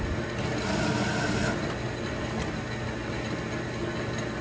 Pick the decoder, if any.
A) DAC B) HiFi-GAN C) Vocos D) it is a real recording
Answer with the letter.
D